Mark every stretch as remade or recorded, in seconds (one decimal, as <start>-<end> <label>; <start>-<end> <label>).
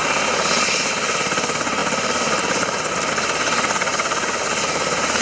0.0-1.8 recorded; 1.8-3.1 remade; 3.1-3.9 recorded; 3.9-5.2 remade